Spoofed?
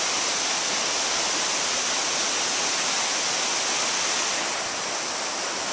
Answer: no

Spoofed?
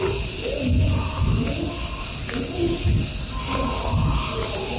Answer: no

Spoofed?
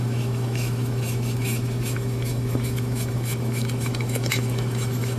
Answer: yes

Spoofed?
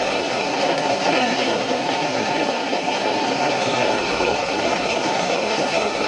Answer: yes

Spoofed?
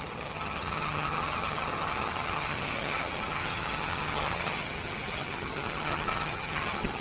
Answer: yes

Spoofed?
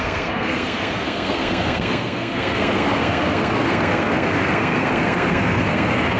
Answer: yes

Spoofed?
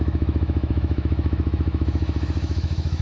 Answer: yes